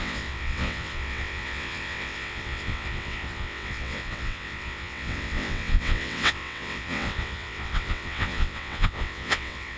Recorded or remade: remade